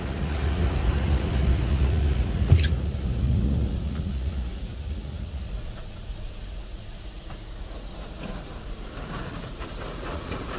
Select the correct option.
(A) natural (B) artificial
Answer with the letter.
B